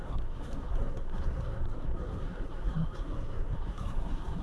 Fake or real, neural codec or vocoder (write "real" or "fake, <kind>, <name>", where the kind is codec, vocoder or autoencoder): fake, codec, SNAC